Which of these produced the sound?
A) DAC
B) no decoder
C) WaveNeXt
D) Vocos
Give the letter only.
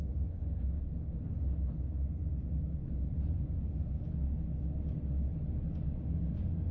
B